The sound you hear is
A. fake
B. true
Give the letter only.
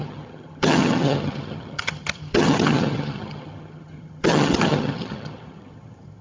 A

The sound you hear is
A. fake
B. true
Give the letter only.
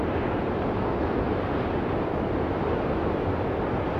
B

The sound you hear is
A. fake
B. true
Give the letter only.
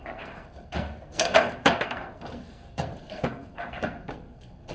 A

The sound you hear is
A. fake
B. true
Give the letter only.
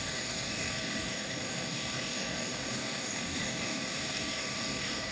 A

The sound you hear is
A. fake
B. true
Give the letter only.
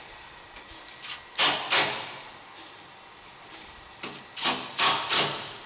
B